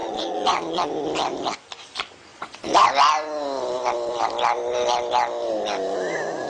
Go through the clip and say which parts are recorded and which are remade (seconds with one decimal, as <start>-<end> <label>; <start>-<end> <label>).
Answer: 0.0-0.9 remade; 0.9-2.3 recorded; 2.3-2.9 remade; 2.9-6.5 recorded